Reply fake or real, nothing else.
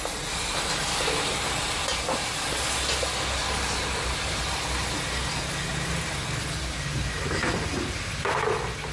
real